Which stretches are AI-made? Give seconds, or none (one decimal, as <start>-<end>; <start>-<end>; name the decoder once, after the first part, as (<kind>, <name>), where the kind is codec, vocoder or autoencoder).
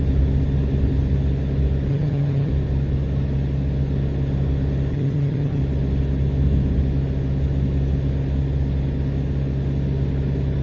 1.9-2.5 (vocoder, HiFi-GAN); 4.9-5.6